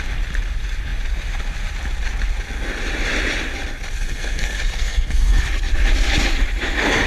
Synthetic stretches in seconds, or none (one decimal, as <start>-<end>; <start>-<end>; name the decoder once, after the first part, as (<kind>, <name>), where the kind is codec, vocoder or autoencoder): 4.0-5.4 (codec, SNAC)